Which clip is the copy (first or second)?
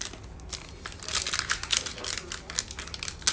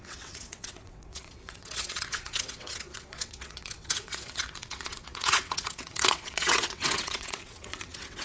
second